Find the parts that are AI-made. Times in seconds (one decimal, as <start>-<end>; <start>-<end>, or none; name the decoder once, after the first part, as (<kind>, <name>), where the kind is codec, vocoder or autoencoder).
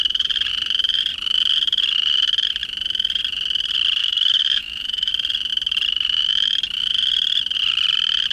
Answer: 4.0-5.1 (autoencoder, DAC-VAE)